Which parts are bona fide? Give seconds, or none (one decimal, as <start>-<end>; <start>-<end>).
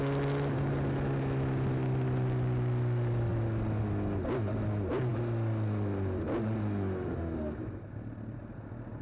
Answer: 0.0-9.0